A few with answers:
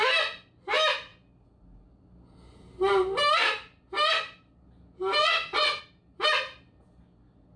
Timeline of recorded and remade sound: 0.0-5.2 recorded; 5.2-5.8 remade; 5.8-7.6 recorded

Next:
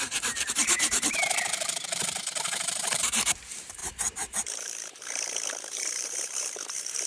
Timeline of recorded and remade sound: 0.0-7.1 remade

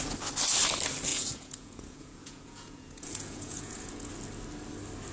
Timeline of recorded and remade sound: 0.0-1.1 recorded; 1.1-4.1 remade; 4.1-5.1 recorded

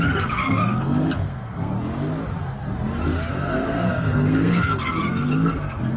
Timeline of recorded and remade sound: 0.0-1.7 remade; 1.7-3.3 recorded; 3.3-6.0 remade

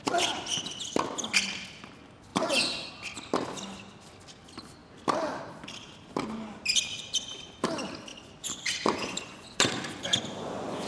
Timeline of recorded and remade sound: 0.0-2.3 recorded; 2.3-2.9 remade; 2.9-8.1 recorded; 8.1-10.9 remade

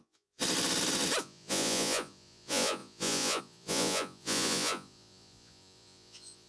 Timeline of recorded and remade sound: 0.0-0.4 remade; 0.4-1.2 recorded; 1.2-6.5 remade

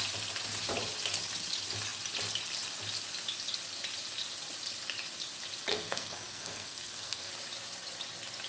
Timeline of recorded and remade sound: 0.0-5.7 recorded; 5.7-7.3 remade; 7.3-8.5 recorded